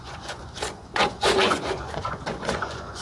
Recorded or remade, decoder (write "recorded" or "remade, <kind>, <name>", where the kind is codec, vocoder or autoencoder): remade, vocoder, Vocos